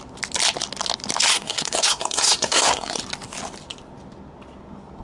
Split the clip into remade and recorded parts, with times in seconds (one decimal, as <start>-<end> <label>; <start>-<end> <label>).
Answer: 0.0-1.3 recorded; 1.3-3.0 remade; 3.0-5.0 recorded